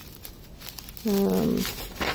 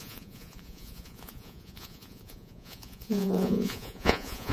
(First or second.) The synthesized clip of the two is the second